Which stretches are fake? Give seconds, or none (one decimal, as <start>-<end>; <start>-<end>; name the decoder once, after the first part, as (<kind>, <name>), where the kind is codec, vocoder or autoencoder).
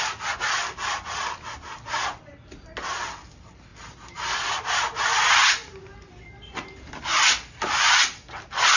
none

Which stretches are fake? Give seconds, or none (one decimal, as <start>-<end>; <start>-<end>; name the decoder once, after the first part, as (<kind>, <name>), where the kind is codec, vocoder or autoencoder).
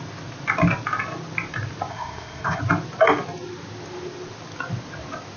1.9-2.6 (codec, ZipCodec)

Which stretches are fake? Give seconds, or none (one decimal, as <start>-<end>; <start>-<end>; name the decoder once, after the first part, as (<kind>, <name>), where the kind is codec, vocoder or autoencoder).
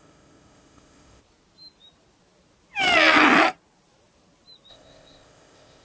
0.0-1.2 (codec, ZipCodec); 4.7-5.8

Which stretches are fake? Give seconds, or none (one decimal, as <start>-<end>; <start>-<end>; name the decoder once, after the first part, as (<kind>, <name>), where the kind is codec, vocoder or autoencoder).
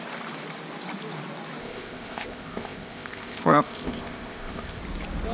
1.6-4.8 (codec, ZipCodec)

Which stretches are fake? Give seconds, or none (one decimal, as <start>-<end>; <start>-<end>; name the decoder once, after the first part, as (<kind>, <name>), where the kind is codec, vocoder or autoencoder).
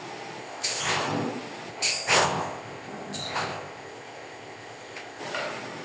0.4-1.0 (codec, ZipCodec); 1.7-5.2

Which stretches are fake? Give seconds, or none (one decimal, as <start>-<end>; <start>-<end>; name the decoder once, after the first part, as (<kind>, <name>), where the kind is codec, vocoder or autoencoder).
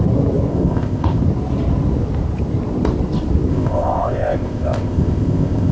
0.5-1.2 (codec, ZipCodec); 3.5-5.7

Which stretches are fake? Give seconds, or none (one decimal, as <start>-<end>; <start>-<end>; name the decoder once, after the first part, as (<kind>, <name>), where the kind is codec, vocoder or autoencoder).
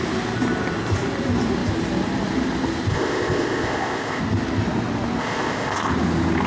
2.9-4.2 (codec, ZipCodec); 5.2-5.9